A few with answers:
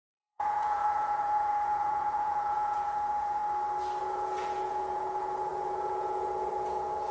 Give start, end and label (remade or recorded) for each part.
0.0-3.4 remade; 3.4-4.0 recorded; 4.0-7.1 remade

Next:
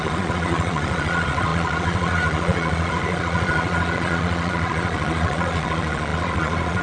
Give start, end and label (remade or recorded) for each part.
0.0-6.8 remade

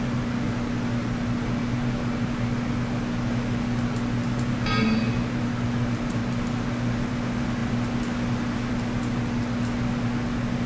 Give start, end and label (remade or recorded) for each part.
0.0-10.7 recorded

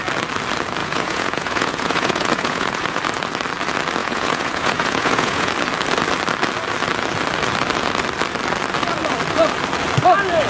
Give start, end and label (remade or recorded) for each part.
0.0-0.8 recorded; 0.8-3.0 remade; 3.0-4.0 recorded; 4.0-5.5 remade; 5.5-10.5 recorded

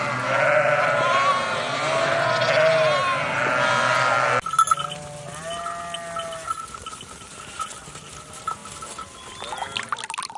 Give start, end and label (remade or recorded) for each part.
0.0-10.4 recorded

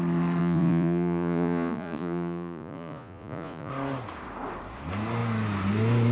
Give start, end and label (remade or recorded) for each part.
0.0-0.4 recorded; 0.4-3.7 remade; 3.7-6.1 recorded